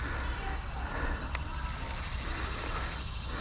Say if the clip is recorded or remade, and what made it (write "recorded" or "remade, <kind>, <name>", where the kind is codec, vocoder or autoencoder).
recorded